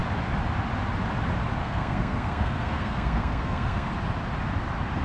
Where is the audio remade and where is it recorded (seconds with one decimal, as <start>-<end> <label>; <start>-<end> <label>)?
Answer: 0.0-1.6 recorded; 1.6-3.9 remade; 3.9-5.0 recorded